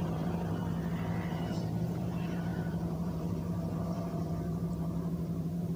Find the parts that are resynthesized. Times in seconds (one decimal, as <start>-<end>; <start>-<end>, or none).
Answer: 0.0-0.6; 1.3-5.8